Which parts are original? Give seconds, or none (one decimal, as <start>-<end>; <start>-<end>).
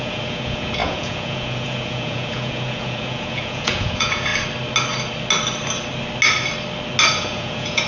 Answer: 4.3-7.1